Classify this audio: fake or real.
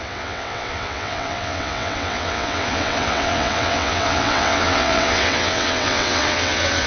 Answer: fake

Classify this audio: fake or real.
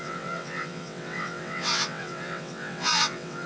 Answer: fake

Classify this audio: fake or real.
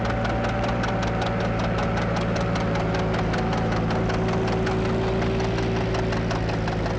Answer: real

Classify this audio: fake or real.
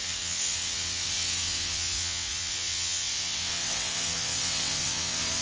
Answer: fake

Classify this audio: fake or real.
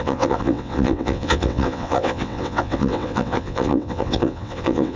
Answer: fake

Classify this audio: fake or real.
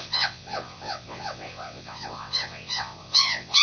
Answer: fake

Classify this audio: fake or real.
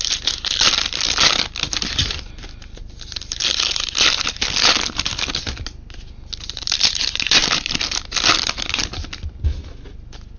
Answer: real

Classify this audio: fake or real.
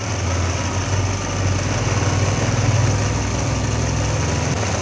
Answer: real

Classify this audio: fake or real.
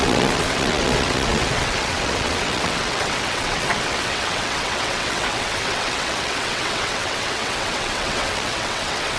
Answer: fake